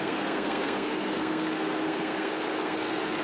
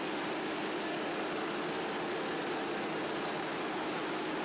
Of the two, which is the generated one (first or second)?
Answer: first